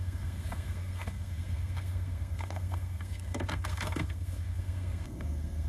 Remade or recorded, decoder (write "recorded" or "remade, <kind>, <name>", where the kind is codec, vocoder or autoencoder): remade, codec, SNAC